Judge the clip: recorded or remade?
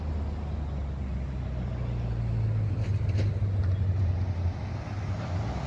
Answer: recorded